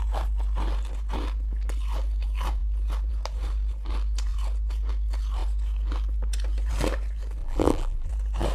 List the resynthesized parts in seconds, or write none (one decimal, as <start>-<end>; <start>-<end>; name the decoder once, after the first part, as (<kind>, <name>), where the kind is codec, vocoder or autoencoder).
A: 7.4-8.1 (vocoder, BigVGAN v2)